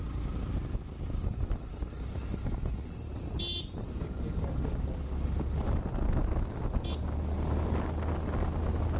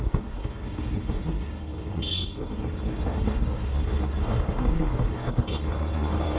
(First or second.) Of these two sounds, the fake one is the second